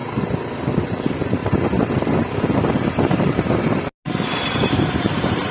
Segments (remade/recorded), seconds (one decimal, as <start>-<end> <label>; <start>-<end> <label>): 0.0-0.6 recorded; 0.6-1.4 remade; 1.4-2.9 recorded; 2.9-3.9 remade; 3.9-4.5 recorded; 4.5-5.5 remade